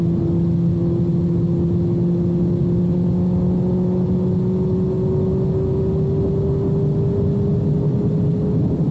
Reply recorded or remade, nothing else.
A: recorded